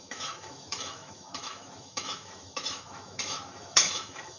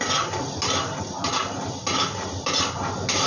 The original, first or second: second